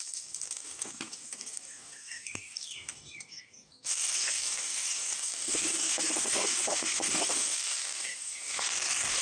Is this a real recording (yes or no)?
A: no